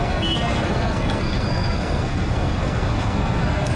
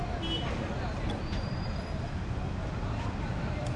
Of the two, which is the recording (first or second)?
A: second